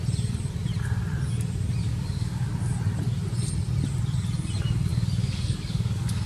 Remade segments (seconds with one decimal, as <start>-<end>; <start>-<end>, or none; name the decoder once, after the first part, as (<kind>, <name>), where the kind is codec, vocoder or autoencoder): 1.8-2.5 (codec, DAC); 4.9-6.3